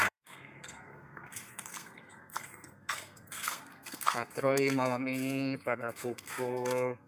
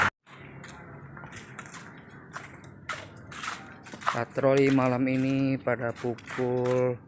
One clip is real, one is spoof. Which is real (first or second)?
second